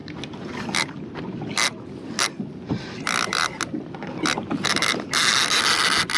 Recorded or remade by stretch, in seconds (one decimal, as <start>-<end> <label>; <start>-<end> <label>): 0.0-6.2 recorded